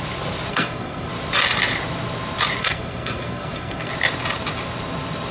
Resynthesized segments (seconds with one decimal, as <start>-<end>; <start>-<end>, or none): 0.5-1.1; 2.6-3.9